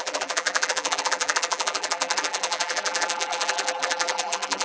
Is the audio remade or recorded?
remade